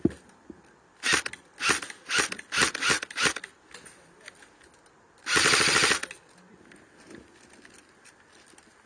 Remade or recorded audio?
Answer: recorded